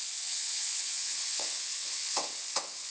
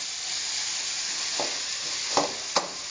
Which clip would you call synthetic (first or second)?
first